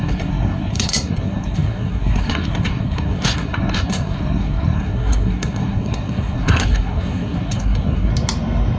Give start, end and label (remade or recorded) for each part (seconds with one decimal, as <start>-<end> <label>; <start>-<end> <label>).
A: 0.0-8.1 remade; 8.1-8.8 recorded